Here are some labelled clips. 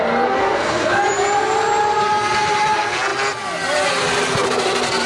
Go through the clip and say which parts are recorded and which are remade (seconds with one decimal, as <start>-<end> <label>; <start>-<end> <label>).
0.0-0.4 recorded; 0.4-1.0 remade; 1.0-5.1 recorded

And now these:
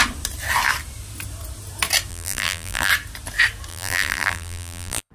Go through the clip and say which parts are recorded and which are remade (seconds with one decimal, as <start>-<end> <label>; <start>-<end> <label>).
0.0-2.1 recorded; 2.1-2.9 remade; 2.9-3.7 recorded; 3.7-5.1 remade

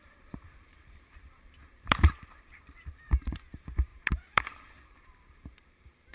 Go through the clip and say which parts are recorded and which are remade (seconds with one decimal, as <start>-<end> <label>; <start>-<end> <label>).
0.0-6.1 remade

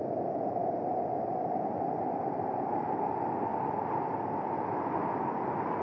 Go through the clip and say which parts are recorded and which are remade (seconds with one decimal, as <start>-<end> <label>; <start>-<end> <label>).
0.0-0.6 recorded; 0.6-2.7 remade; 2.7-5.8 recorded

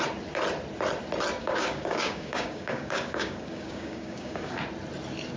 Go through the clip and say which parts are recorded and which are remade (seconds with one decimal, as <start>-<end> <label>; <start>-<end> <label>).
0.0-1.4 recorded; 1.4-4.6 remade; 4.6-5.4 recorded